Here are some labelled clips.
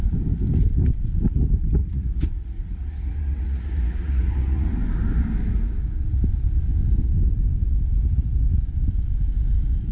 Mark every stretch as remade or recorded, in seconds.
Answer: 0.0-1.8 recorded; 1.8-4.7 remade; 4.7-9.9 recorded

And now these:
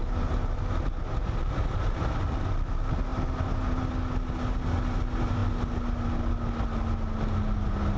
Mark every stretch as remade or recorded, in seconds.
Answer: 0.0-8.0 recorded

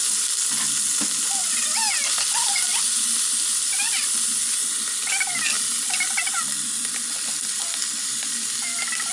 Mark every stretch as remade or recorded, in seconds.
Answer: 0.0-1.4 recorded; 1.4-1.9 remade; 1.9-9.1 recorded

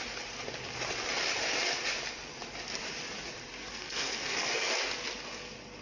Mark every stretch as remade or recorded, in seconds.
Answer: 0.0-3.6 recorded; 3.6-4.7 remade; 4.7-5.8 recorded

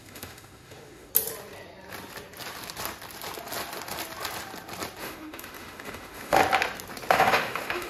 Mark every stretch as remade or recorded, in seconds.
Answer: 0.0-1.1 remade; 1.1-5.0 recorded; 5.0-6.4 remade; 6.4-7.1 recorded; 7.1-7.9 remade

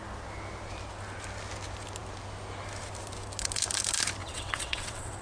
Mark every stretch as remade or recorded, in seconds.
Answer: 0.0-4.2 recorded; 4.2-5.2 remade

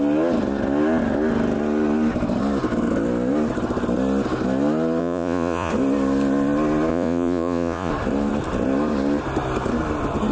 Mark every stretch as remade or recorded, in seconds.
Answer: 0.0-5.0 recorded; 5.0-5.7 remade; 5.7-6.9 recorded; 6.9-7.9 remade; 7.9-10.3 recorded

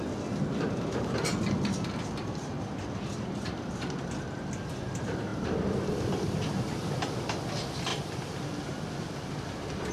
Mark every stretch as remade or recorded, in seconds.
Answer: 0.0-1.3 recorded; 1.3-3.7 remade; 3.7-9.9 recorded